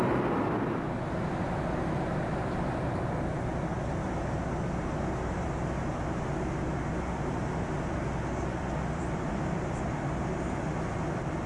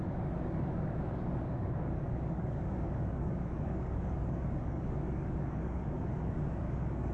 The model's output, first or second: second